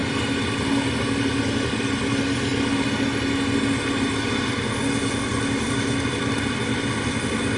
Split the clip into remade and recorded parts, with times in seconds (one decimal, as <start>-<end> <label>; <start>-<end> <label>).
0.0-7.6 recorded